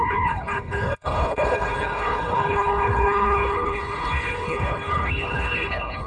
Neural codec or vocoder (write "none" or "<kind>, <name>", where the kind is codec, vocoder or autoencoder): codec, HILCodec